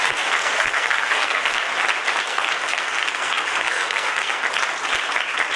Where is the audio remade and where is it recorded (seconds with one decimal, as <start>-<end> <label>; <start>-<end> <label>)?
0.0-1.7 remade; 1.7-2.2 recorded; 2.2-4.4 remade; 4.4-5.6 recorded